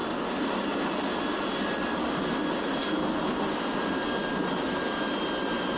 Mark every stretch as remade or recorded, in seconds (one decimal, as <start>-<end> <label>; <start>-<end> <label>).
0.0-5.8 recorded